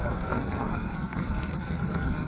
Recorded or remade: remade